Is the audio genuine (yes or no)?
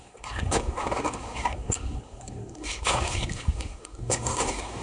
no